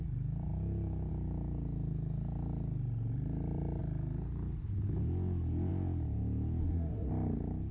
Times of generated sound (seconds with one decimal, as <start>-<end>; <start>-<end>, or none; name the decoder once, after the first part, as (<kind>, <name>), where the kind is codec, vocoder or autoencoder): 6.6-7.1 (codec, SNAC)